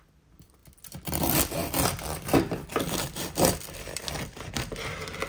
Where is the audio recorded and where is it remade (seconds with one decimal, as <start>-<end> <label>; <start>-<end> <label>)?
0.0-2.7 recorded; 2.7-4.0 remade; 4.0-5.3 recorded